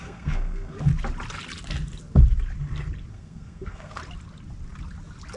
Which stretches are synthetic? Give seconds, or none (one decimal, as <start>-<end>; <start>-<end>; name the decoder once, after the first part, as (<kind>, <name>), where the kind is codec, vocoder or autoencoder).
0.0-0.9 (codec, SNAC); 3.1-4.0